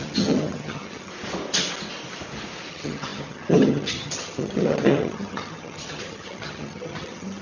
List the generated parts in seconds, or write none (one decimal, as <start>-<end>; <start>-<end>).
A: 0.0-1.1; 2.7-7.4